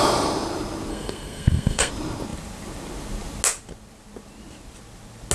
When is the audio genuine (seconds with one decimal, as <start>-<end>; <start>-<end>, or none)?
0.0-0.9; 1.9-5.3